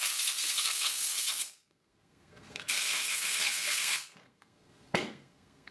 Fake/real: fake